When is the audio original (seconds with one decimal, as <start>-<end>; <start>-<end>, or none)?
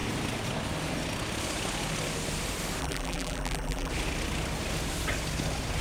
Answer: 0.0-2.8; 3.9-5.8